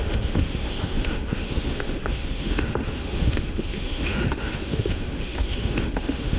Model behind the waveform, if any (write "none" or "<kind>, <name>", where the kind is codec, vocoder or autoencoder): autoencoder, DAC-VAE